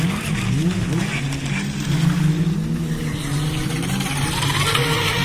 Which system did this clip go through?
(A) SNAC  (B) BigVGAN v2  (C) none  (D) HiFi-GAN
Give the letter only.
C